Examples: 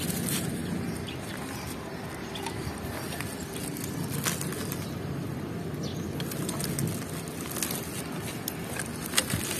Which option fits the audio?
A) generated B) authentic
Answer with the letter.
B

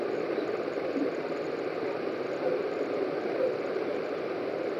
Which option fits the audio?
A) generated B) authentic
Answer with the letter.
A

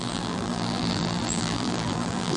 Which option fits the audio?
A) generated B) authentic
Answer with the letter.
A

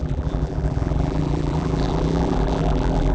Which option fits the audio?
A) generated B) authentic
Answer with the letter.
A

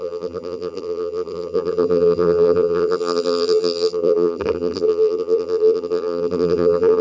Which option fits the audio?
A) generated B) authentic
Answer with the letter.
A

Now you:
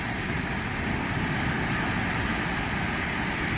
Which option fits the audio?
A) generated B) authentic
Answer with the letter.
B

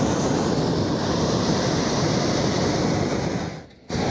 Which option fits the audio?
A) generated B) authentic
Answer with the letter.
A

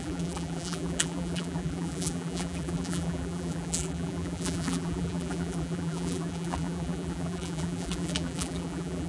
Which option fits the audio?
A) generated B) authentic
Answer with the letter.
A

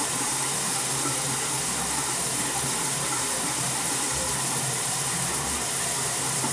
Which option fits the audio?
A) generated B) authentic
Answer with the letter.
A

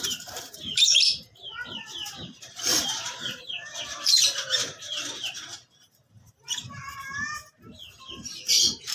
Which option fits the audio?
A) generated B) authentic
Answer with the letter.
A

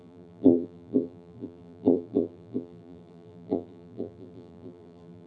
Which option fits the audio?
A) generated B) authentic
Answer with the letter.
A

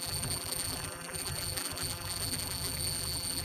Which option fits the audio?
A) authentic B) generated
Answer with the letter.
B